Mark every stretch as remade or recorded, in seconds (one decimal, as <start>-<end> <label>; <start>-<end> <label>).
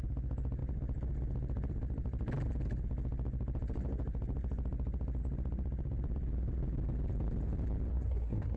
0.0-7.9 recorded; 7.9-8.6 remade